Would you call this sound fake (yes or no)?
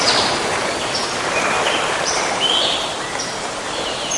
no